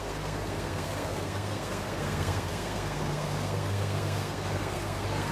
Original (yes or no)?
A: no